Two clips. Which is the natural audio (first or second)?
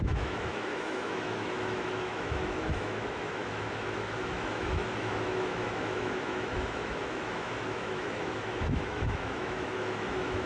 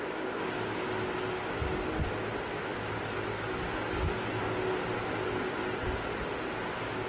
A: second